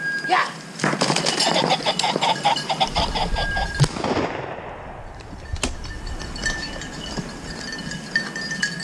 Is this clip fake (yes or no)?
no